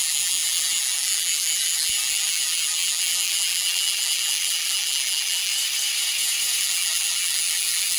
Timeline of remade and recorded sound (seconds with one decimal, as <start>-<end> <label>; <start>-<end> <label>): 0.0-5.5 remade; 5.5-6.6 recorded; 6.6-8.0 remade